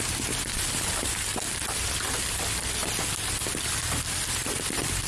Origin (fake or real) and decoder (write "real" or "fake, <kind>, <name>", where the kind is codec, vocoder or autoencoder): fake, vocoder, BigVGAN v2